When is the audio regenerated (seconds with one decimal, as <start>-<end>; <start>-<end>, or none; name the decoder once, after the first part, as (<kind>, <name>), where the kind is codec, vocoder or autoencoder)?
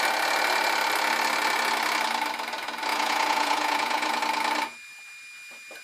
2.9-4.2 (vocoder, Vocos)